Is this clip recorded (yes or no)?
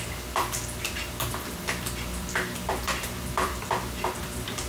no